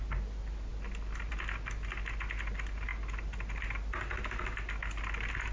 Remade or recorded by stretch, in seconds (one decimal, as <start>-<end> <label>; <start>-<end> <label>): 0.0-5.5 recorded